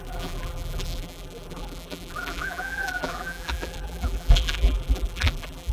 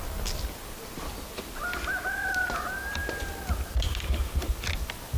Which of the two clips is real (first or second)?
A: second